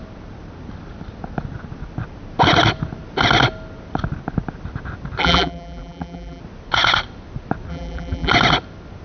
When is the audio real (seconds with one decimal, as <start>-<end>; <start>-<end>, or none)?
0.0-5.2; 6.4-7.7; 8.3-9.0